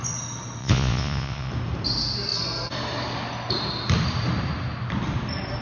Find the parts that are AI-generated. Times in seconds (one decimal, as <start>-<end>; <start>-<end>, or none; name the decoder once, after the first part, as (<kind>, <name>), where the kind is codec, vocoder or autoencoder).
0.6-1.5 (vocoder, Vocos)